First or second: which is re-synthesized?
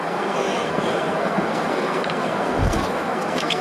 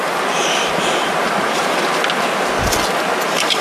first